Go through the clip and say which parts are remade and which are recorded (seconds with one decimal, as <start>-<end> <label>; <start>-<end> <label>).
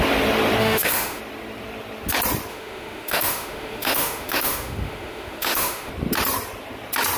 0.0-0.6 recorded; 0.6-1.2 remade; 1.2-2.5 recorded; 2.5-5.9 remade; 5.9-7.2 recorded